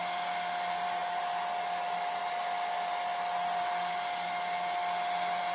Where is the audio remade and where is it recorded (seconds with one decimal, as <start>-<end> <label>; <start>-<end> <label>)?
0.0-5.5 recorded